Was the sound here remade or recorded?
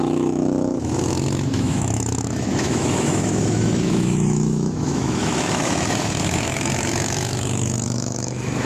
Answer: remade